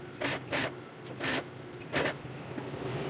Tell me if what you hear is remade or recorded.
recorded